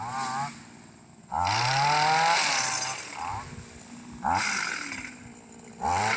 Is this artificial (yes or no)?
no